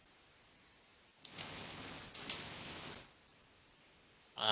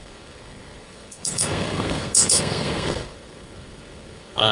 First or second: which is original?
first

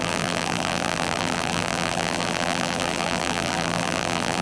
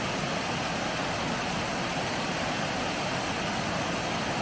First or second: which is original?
second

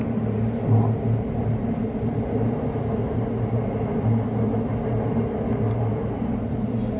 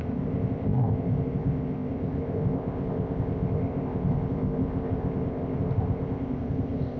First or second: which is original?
first